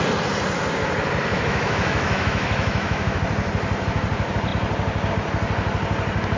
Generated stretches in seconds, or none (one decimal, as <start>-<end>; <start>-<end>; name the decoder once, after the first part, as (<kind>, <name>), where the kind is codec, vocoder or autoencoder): 1.3-3.2 (autoencoder, DAC-VAE)